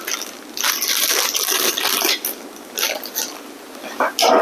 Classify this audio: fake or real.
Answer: real